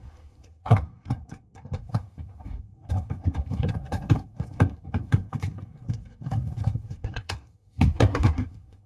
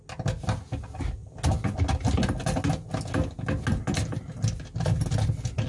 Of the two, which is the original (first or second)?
second